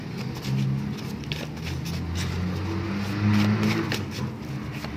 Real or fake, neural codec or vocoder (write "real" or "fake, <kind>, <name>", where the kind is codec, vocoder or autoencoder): real